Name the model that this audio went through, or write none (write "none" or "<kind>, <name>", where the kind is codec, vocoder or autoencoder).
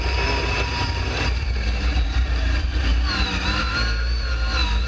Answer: vocoder, BigVGAN v2